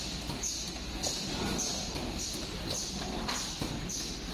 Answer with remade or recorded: recorded